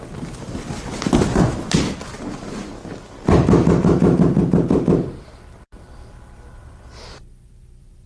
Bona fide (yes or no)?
no